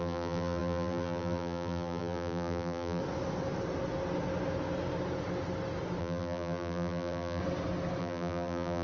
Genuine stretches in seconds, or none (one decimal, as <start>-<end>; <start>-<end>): 3.0-6.0; 7.4-8.0